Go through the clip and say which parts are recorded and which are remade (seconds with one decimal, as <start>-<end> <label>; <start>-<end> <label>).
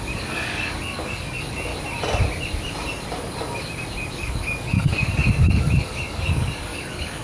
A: 0.0-1.7 remade; 1.7-4.1 recorded; 4.1-7.2 remade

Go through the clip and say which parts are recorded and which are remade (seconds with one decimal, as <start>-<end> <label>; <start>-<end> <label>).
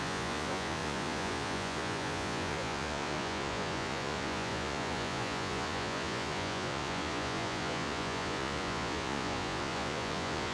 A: 0.0-10.5 remade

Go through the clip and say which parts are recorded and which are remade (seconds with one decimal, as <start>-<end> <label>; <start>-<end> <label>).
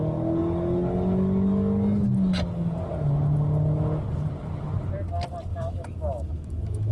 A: 0.0-5.5 recorded; 5.5-6.9 remade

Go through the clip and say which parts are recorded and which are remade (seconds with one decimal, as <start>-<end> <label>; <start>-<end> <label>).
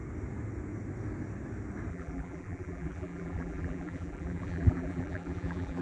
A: 0.0-1.9 recorded; 1.9-5.8 remade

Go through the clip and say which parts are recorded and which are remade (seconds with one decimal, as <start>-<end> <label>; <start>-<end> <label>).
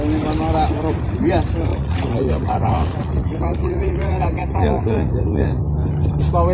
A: 0.0-1.7 recorded; 1.7-5.6 remade; 5.6-6.5 recorded